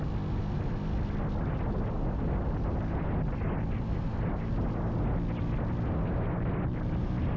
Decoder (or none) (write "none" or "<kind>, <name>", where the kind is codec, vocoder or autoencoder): none